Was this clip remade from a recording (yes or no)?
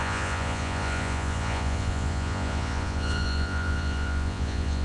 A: yes